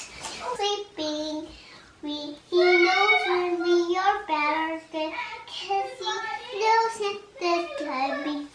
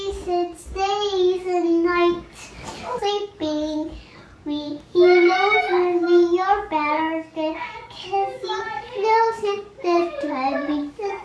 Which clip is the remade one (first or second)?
second